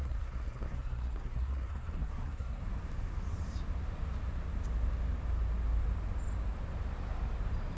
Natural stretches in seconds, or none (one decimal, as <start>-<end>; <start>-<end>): 2.6-7.8